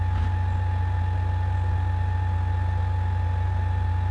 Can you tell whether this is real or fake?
real